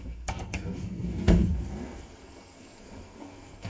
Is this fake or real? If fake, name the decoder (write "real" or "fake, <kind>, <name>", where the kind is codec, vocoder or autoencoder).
fake, codec, SNAC